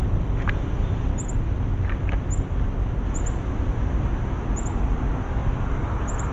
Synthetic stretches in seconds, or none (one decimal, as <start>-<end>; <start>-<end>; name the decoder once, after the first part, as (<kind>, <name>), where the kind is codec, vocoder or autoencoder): 5.4-6.3 (vocoder, BigVGAN v2)